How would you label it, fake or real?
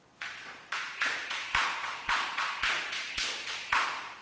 fake